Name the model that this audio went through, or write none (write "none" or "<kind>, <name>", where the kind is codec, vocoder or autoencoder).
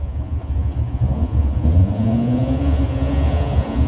vocoder, Vocos